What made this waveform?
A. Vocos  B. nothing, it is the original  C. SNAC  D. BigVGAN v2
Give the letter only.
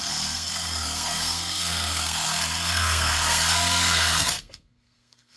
C